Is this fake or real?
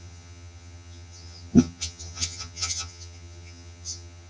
fake